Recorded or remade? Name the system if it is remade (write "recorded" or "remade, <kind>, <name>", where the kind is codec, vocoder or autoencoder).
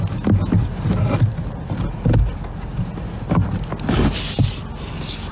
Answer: recorded